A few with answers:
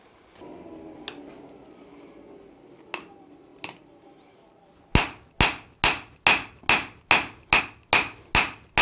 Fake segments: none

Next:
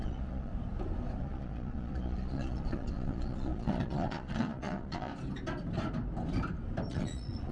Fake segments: 0.0-0.5; 1.2-5.1; 6.9-7.5

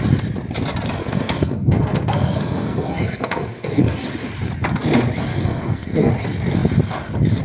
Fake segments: 1.0-4.0; 5.3-6.1

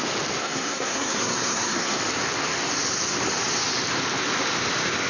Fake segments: 0.4-2.0

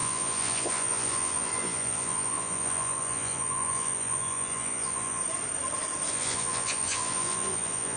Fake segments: 0.0-5.2; 6.1-8.0

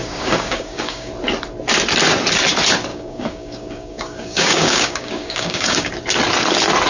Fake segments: 0.0-1.1; 2.9-5.9

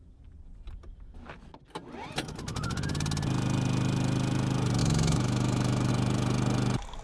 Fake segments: 4.8-5.9